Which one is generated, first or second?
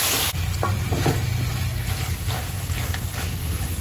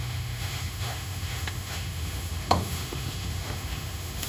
second